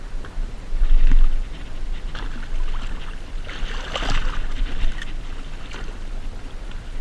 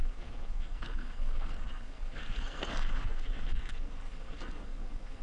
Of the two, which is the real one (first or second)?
first